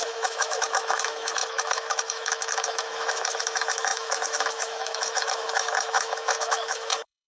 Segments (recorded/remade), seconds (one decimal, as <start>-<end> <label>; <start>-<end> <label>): 0.0-7.3 remade